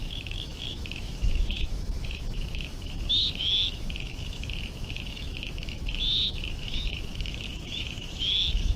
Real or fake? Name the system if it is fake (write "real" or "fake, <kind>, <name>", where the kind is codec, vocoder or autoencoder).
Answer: fake, autoencoder, DAC-VAE